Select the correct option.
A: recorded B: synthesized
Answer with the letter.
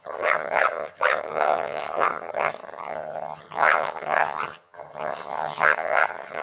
B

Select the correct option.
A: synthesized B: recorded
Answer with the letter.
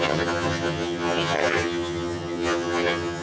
A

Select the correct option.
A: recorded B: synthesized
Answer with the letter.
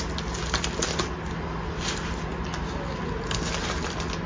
A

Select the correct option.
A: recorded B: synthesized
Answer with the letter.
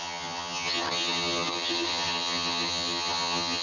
B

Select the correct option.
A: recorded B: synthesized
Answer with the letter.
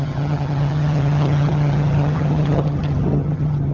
B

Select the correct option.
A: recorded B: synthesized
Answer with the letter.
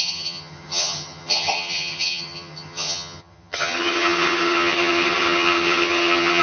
B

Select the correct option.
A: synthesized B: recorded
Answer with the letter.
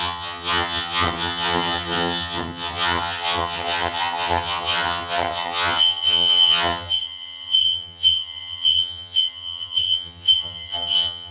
A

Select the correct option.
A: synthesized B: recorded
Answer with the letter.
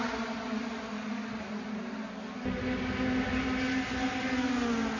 B